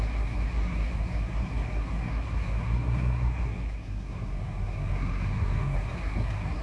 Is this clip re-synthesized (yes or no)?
yes